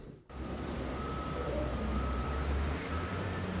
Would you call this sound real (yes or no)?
no